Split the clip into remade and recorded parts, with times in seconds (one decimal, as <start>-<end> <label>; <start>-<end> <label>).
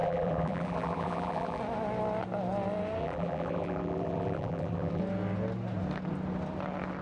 0.0-1.6 remade; 1.6-3.0 recorded; 3.0-5.0 remade; 5.0-7.0 recorded